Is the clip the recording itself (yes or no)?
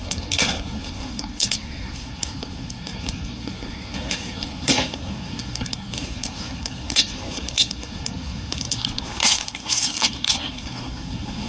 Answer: no